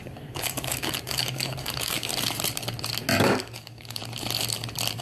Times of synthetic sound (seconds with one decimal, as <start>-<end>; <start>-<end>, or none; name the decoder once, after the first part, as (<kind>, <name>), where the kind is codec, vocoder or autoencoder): 0.0-2.1 (codec, DAC); 3.2-4.0